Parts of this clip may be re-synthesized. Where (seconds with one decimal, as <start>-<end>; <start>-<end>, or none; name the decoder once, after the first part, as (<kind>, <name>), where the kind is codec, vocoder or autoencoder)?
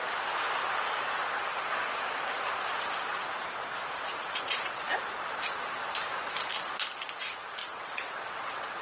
7.6-8.8 (vocoder, WaveNeXt)